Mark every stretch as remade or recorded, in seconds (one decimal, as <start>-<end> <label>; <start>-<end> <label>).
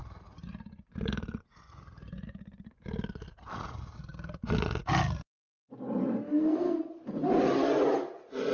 0.0-6.3 recorded; 6.3-6.9 remade; 6.9-8.5 recorded